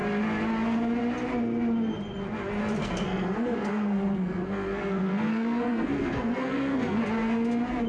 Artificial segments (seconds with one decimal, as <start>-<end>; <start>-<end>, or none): 2.8-7.0